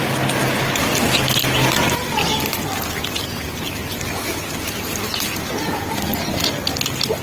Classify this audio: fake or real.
real